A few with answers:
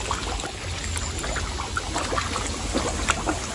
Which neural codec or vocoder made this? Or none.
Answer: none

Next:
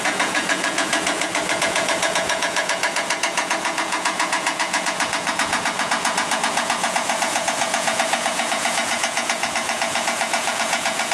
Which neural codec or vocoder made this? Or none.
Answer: vocoder, Vocos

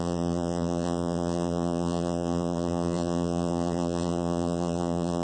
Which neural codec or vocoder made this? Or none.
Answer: vocoder, BigVGAN v2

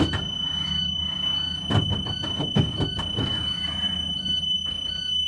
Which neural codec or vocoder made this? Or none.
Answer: none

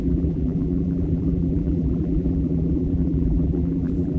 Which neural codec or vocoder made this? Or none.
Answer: vocoder, BigVGAN v2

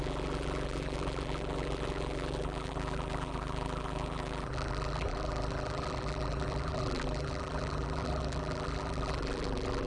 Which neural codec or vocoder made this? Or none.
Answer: vocoder, BigVGAN v2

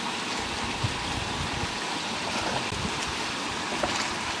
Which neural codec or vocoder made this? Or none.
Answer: none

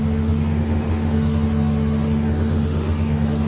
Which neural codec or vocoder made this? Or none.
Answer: autoencoder, DAC-VAE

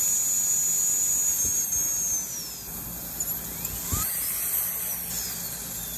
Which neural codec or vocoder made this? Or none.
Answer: none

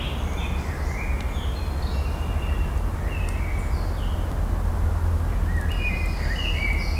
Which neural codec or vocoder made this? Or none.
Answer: none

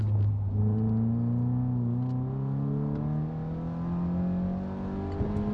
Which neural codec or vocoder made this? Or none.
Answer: none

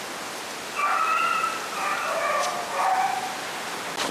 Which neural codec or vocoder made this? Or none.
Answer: none